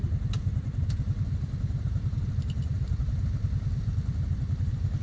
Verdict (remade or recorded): recorded